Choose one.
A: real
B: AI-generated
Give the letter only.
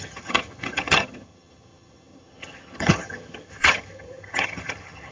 B